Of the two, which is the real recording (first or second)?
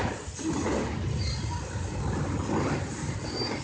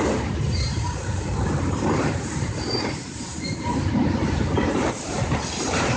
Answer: first